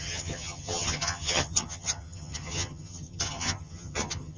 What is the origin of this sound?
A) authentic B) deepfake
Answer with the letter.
B